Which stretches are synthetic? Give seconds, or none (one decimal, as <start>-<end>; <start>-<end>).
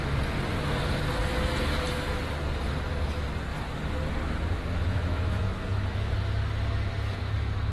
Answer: 4.8-6.3